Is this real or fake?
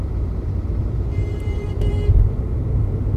fake